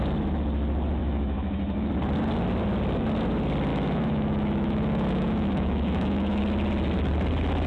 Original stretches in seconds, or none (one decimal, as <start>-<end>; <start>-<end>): 0.0-1.0; 1.9-3.7; 6.4-7.7